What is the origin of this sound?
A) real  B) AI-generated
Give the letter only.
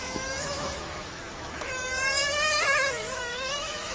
B